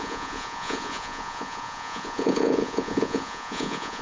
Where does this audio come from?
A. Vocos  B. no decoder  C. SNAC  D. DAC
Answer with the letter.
A